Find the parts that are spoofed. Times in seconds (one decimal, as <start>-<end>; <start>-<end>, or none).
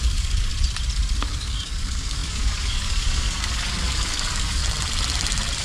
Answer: 0.0-0.5; 1.2-4.6